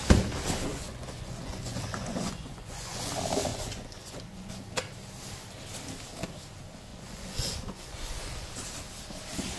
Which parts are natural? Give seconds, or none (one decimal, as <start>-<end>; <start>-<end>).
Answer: 0.0-0.7; 3.1-3.5; 4.5-6.9; 8.5-9.6